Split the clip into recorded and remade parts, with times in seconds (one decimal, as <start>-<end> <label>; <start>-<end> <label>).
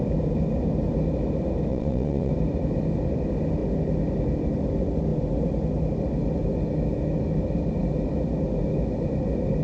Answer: 0.0-1.7 recorded; 1.7-2.3 remade; 2.3-9.6 recorded